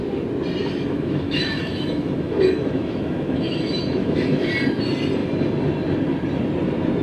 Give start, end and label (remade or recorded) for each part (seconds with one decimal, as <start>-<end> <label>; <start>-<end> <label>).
0.0-0.6 recorded; 0.6-4.5 remade; 4.5-7.0 recorded